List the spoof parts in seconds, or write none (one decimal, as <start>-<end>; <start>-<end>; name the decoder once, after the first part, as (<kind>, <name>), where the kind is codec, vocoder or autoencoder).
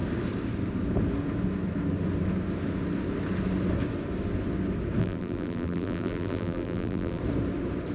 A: 5.0-7.2 (vocoder, BigVGAN v2)